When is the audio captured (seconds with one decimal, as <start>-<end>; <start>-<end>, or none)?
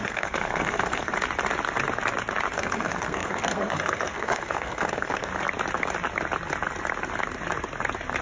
1.1-2.5; 5.3-8.2